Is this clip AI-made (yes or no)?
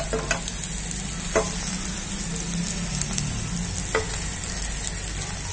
no